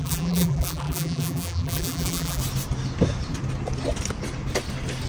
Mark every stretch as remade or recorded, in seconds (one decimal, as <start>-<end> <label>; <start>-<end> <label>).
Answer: 0.0-2.4 remade; 2.4-5.1 recorded